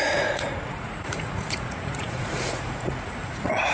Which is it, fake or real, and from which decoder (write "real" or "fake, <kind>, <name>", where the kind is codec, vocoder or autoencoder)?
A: fake, vocoder, Vocos